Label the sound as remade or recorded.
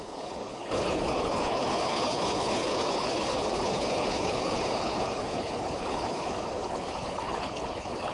remade